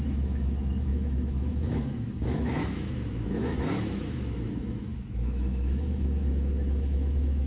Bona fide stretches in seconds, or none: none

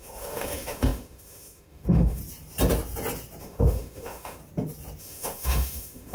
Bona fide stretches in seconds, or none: 2.2-3.4; 4.4-5.0